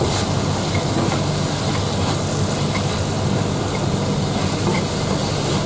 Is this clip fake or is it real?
real